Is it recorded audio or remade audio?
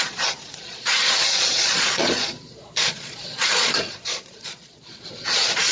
remade